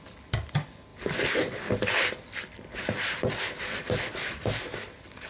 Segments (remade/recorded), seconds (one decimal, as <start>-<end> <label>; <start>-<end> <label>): 0.0-0.9 recorded; 0.9-4.1 remade; 4.1-5.3 recorded